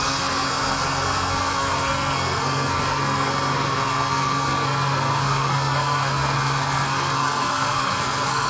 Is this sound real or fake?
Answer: fake